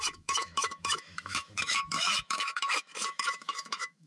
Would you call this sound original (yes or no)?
no